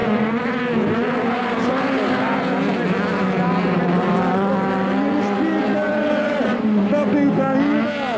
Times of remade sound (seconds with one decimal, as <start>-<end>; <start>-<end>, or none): 0.0-0.6; 5.9-6.6